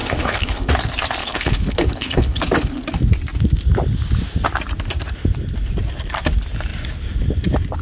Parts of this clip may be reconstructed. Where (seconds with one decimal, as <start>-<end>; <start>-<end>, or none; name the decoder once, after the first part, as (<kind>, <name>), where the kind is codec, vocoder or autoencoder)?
0.0-0.7 (codec, HILCodec); 1.2-2.4